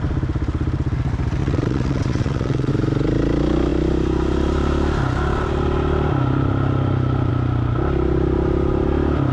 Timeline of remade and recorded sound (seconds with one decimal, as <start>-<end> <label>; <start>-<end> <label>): 0.0-1.4 recorded; 1.4-2.7 remade; 2.7-9.3 recorded